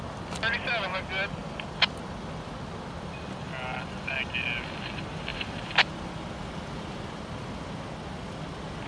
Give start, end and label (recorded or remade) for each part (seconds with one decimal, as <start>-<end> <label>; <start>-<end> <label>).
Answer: 0.0-5.3 recorded; 5.3-7.8 remade; 7.8-8.9 recorded